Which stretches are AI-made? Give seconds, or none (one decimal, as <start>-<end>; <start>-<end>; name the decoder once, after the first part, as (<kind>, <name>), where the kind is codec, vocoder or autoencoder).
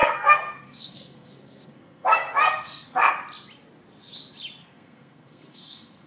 0.0-3.1 (codec, SNAC); 4.6-6.1